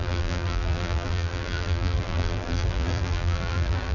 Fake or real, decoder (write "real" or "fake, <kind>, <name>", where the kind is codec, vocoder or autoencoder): fake, vocoder, BigVGAN v2